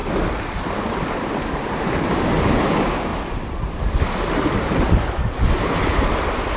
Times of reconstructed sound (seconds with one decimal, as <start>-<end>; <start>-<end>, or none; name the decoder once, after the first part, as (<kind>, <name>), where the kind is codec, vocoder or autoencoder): 0.0-2.0 (vocoder, BigVGAN v2); 3.1-4.0